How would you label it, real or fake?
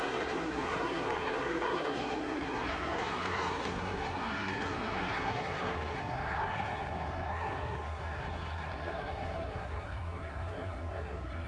fake